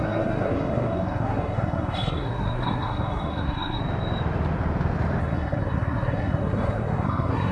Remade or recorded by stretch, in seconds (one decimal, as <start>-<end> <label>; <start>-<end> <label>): 0.0-3.8 remade; 3.8-5.2 recorded; 5.2-7.5 remade